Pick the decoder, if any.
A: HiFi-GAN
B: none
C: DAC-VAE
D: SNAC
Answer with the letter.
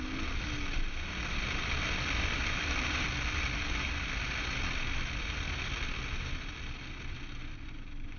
B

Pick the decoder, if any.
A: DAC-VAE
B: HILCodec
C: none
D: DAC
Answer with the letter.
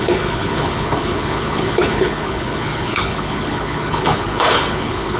B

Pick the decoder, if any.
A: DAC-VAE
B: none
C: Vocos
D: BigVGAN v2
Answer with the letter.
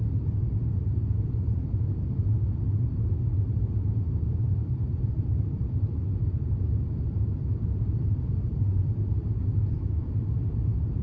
D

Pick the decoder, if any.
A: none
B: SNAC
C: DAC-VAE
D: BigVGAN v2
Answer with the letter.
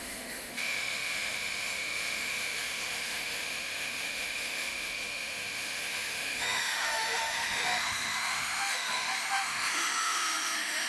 C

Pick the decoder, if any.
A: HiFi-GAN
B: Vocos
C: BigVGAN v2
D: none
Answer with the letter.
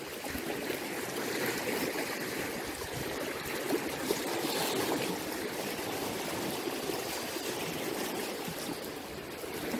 D